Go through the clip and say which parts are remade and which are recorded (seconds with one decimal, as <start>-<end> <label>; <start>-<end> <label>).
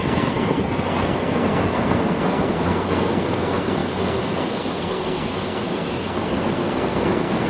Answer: 0.0-7.5 remade